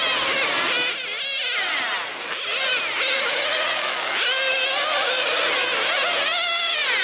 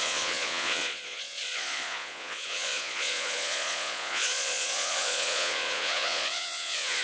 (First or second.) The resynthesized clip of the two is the second